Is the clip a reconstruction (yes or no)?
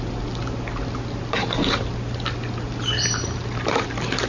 no